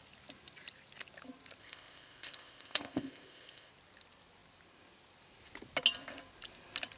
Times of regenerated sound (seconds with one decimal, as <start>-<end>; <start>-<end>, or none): 1.6-3.7